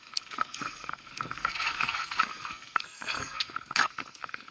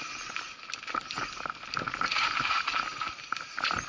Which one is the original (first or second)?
second